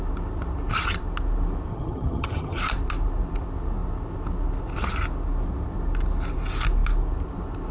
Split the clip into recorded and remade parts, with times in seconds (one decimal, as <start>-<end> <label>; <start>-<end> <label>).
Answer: 0.0-1.7 recorded; 1.7-2.6 remade; 2.6-7.7 recorded